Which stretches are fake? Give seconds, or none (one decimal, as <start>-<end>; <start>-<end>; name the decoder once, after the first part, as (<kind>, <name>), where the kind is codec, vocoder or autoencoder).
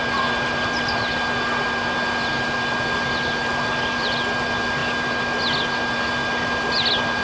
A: none